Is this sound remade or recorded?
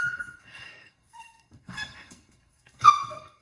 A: remade